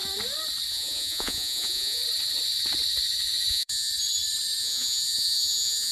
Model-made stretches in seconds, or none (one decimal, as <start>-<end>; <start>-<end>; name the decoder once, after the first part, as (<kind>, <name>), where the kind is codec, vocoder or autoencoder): 0.7-2.0 (vocoder, Vocos); 3.5-3.9; 4.6-5.9